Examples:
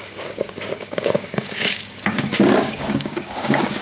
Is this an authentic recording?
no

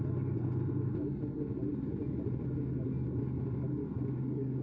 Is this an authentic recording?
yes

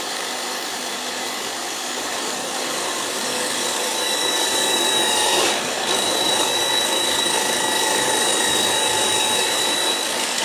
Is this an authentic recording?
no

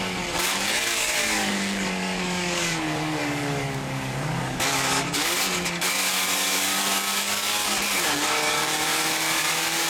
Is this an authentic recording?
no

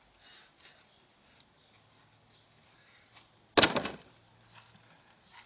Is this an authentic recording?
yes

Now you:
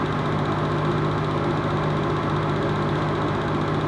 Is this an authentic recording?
yes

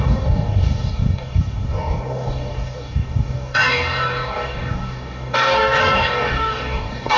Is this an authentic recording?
no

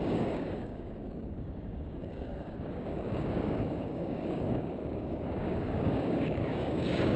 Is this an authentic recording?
no